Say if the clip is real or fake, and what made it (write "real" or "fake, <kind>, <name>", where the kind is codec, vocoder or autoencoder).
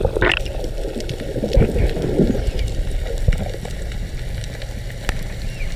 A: real